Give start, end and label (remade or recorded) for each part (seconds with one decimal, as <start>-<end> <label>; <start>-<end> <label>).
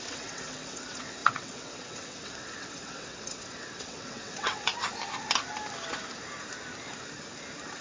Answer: 0.0-4.7 remade; 4.7-7.8 recorded